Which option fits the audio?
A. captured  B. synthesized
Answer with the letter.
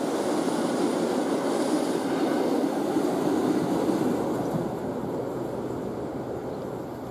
A